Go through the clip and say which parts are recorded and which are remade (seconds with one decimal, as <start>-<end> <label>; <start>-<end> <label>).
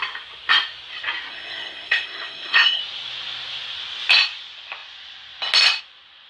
0.0-1.3 recorded; 1.3-2.8 remade; 2.8-6.3 recorded